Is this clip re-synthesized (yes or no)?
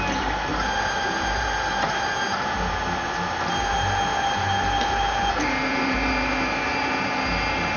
yes